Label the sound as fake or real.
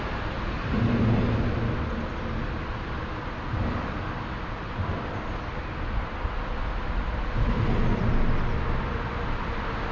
real